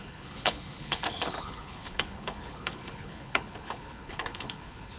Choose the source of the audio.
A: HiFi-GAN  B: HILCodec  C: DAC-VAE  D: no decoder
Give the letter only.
B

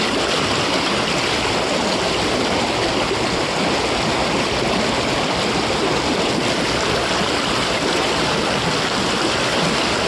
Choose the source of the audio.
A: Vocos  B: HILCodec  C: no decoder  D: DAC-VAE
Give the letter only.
C